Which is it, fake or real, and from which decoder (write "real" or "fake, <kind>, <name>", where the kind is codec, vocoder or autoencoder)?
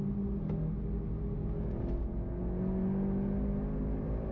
real